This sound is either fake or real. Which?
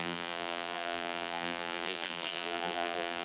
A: fake